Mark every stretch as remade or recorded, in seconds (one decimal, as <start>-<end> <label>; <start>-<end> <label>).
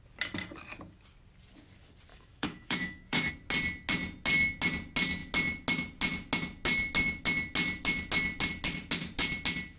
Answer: 0.0-2.1 recorded; 2.1-3.3 remade; 3.3-9.8 recorded